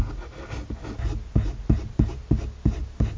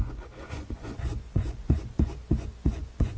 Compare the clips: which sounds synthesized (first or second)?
second